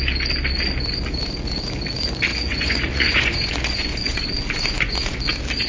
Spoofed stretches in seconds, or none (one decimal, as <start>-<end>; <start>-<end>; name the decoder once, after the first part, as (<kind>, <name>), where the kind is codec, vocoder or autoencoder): 2.3-5.2 (vocoder, Vocos)